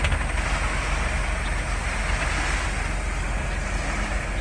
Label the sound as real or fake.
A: real